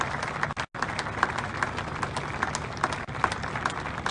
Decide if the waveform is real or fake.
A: real